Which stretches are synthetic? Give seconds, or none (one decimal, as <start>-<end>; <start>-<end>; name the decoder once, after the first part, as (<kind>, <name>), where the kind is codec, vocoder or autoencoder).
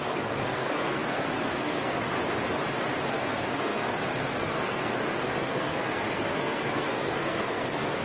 0.0-2.1 (codec, SNAC); 3.1-8.0